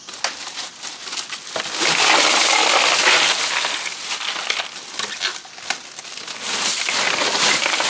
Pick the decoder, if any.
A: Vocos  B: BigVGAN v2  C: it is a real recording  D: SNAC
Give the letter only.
C